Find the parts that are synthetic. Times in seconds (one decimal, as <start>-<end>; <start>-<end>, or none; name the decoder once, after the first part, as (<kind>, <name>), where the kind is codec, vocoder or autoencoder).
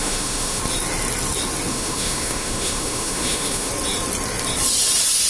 0.0-0.6 (autoencoder, DAC-VAE); 1.7-3.7